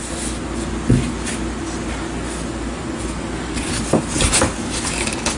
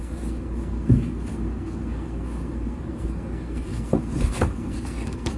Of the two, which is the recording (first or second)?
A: first